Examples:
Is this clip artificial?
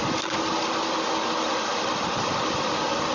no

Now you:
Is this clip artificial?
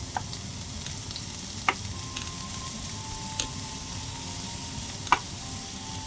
no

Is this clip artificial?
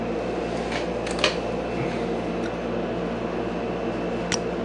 no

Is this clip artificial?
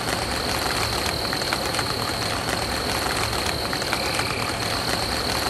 no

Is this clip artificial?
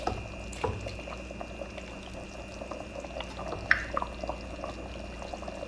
no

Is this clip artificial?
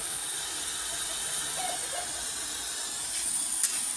no